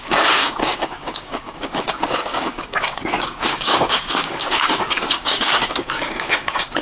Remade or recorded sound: remade